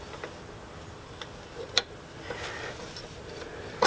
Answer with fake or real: real